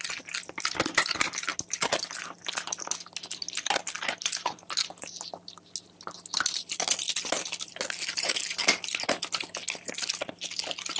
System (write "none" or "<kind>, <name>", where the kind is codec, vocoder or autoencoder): none